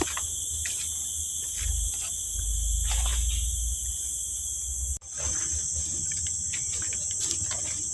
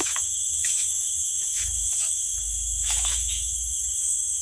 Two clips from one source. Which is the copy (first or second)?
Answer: second